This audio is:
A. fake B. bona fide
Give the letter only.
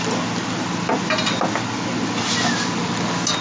B